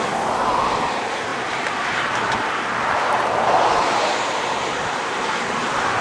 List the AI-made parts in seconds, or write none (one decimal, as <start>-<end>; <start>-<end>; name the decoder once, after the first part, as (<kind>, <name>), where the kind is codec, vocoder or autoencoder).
none